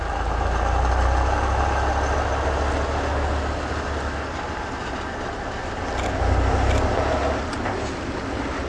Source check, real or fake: real